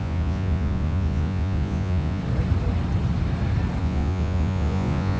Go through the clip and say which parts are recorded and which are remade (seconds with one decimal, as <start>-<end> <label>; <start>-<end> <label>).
0.0-2.2 remade; 2.2-3.8 recorded; 3.8-5.2 remade